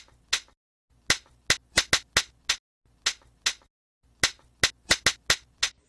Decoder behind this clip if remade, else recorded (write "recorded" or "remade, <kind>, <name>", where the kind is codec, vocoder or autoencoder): recorded